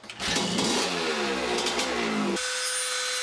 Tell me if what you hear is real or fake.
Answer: real